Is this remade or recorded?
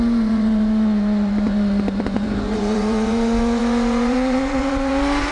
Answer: remade